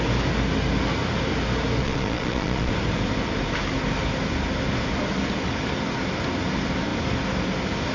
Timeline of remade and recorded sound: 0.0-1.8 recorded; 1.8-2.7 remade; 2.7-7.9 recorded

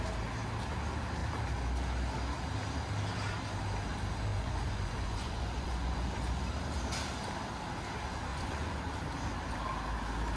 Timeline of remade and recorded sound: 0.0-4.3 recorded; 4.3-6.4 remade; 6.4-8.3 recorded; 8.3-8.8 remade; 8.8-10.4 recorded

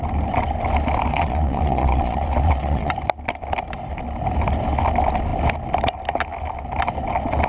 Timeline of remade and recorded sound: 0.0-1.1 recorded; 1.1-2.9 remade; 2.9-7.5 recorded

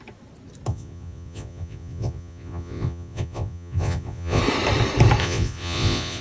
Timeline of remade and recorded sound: 0.0-0.7 recorded; 0.7-4.4 remade; 4.4-5.2 recorded; 5.2-6.2 remade